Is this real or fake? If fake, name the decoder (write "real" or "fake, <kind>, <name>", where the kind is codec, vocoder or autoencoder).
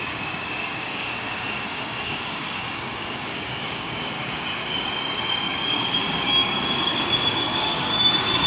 fake, codec, DAC